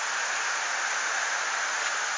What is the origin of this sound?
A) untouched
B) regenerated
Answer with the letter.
B